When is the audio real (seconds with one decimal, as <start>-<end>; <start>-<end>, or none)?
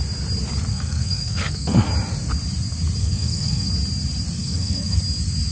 0.0-0.7; 1.9-3.0; 3.7-4.4; 5.0-5.5